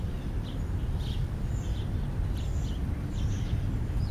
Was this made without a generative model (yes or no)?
no